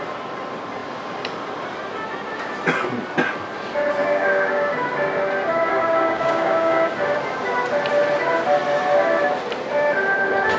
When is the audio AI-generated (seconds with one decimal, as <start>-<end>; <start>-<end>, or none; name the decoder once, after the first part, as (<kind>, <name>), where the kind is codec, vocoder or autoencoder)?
4.0-4.9 (codec, DAC); 5.7-6.9